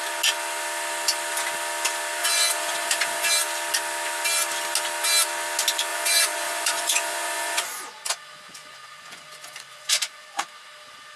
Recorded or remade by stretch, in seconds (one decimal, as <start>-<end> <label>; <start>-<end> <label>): 0.0-2.2 recorded; 2.2-3.3 remade; 3.3-5.9 recorded; 5.9-10.4 remade; 10.4-11.2 recorded